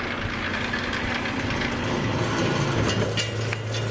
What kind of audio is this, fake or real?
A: real